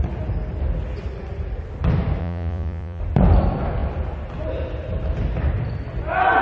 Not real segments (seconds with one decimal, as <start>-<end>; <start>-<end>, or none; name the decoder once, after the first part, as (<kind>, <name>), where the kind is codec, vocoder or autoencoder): 2.2-3.0 (vocoder, Vocos)